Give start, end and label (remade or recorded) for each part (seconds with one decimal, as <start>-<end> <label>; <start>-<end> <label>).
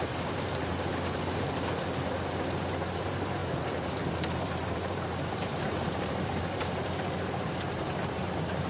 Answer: 0.0-0.9 remade; 0.9-3.0 recorded; 3.0-8.7 remade